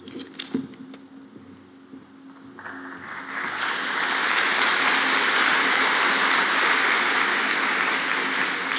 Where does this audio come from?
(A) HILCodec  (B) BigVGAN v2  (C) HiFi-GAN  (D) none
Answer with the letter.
D